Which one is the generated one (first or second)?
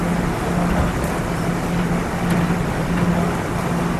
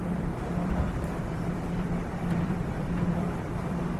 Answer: second